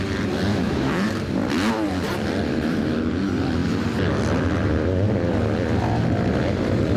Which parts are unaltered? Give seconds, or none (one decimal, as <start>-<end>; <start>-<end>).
0.0-0.5; 1.1-7.0